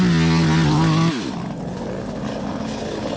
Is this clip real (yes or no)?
yes